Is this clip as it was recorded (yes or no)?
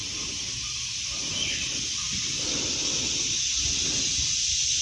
yes